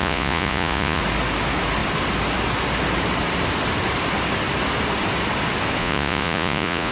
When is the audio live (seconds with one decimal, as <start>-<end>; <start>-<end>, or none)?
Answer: 1.0-5.8